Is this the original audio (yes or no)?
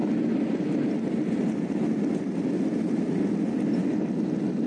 yes